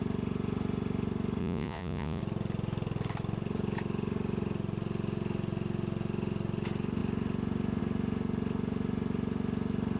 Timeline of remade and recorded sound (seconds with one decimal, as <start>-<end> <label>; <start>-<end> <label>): 0.0-1.4 recorded; 1.4-2.2 remade; 2.2-10.0 recorded